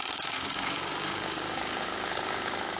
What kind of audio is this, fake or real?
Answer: fake